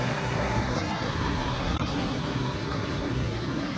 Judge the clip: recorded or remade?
remade